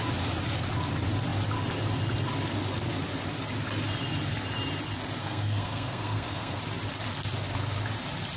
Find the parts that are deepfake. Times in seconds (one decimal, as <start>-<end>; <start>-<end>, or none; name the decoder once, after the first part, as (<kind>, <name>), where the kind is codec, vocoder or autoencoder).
5.2-6.6 (codec, SNAC)